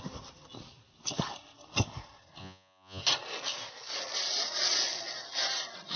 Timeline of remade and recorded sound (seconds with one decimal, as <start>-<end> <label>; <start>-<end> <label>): 0.0-2.4 recorded; 2.4-3.0 remade; 3.0-6.0 recorded